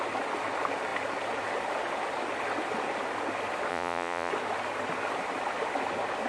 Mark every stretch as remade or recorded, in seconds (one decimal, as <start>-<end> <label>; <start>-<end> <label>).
0.0-3.7 recorded; 3.7-4.3 remade; 4.3-6.3 recorded